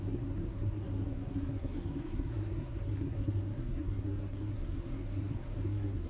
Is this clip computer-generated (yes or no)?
yes